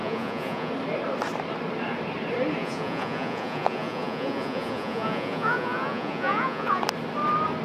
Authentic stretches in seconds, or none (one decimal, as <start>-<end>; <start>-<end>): 0.7-2.6; 6.8-7.6